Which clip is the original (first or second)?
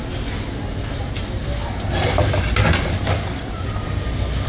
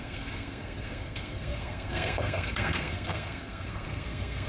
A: first